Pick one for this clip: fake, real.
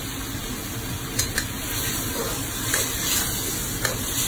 real